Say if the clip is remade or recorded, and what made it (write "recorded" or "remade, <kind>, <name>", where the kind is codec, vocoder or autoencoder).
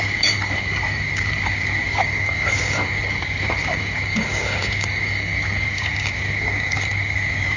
remade, codec, DAC